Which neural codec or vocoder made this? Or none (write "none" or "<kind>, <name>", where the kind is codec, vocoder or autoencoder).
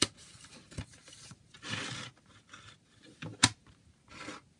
none